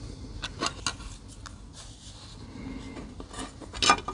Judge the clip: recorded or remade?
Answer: recorded